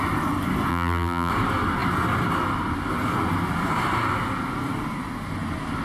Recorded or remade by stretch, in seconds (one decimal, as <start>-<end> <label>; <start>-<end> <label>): 0.0-0.7 recorded; 0.7-1.3 remade; 1.3-5.8 recorded